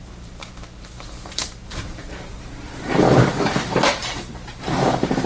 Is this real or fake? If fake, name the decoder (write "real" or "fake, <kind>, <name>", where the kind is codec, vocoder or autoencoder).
fake, vocoder, BigVGAN v2